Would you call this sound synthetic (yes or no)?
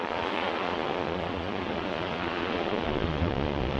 yes